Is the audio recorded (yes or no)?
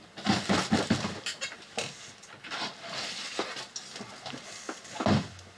yes